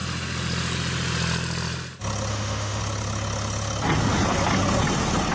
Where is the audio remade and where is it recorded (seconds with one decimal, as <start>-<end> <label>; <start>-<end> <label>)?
0.0-2.3 recorded; 2.3-2.8 remade; 2.8-5.3 recorded